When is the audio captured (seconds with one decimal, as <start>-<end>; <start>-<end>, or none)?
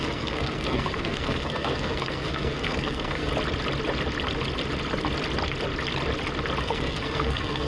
3.3-6.6